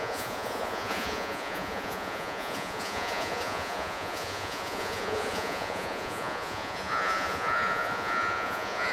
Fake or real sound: fake